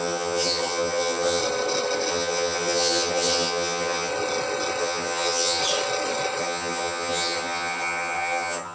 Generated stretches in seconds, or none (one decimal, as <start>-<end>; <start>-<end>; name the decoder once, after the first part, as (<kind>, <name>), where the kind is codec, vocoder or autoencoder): 0.0-1.4 (vocoder, HiFi-GAN); 2.1-4.1; 4.8-5.6; 6.4-8.7